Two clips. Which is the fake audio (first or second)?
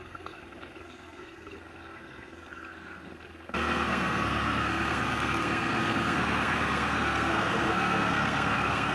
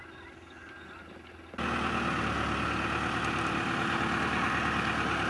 first